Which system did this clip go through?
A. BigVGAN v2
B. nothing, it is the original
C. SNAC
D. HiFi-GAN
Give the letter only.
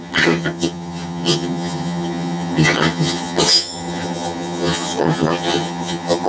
D